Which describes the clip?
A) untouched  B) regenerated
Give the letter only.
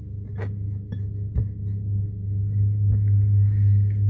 A